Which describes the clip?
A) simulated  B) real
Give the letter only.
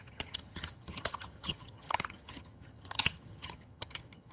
A